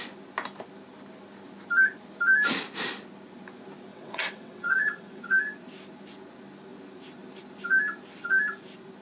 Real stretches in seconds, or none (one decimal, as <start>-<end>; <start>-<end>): 0.0-3.9; 5.2-9.0